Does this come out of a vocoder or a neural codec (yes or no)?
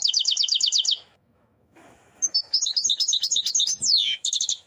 yes